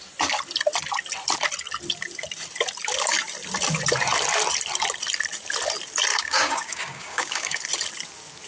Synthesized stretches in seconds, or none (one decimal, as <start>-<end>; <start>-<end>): 6.1-7.6